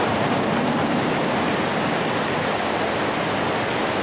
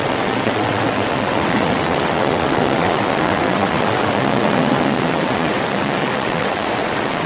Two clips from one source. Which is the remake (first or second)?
second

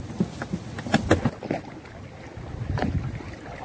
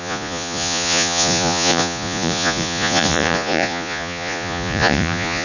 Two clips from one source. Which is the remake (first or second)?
second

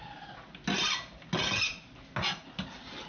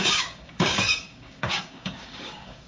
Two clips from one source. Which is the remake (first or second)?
second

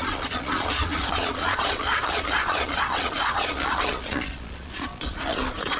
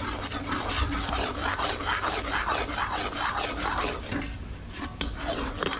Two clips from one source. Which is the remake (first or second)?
first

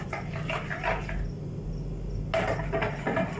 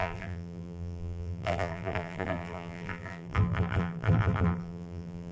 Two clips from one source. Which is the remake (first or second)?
second